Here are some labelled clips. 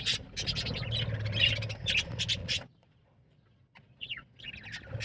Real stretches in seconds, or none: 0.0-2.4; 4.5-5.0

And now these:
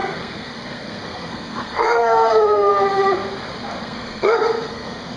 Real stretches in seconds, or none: 2.7-3.8

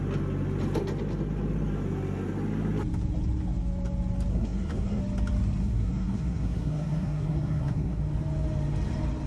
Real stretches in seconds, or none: 0.0-4.3; 5.0-5.6; 8.0-9.3

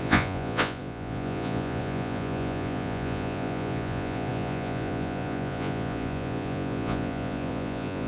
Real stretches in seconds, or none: none